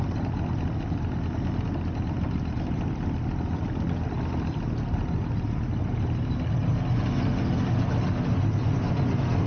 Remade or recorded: recorded